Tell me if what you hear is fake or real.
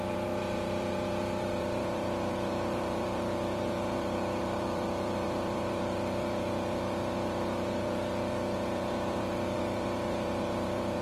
fake